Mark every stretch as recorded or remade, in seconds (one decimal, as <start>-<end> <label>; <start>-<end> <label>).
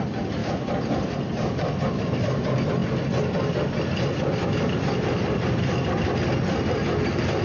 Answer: 0.0-7.4 recorded